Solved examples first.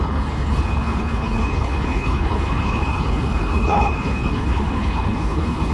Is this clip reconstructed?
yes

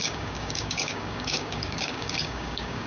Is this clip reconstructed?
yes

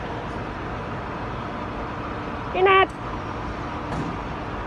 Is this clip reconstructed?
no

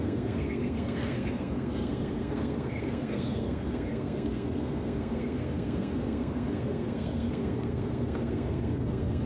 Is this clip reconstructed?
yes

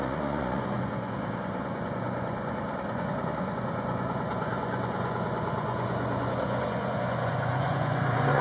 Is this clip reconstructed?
yes